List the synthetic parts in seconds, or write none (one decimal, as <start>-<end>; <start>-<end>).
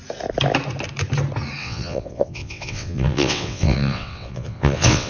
1.6-5.1